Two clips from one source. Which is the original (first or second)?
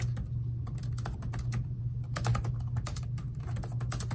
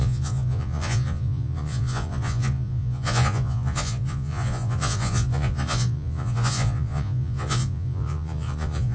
first